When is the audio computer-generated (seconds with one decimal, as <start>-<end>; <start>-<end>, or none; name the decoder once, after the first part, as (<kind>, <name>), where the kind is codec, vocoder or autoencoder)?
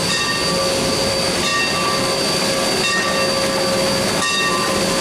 0.6-1.5 (vocoder, BigVGAN v2); 4.5-5.0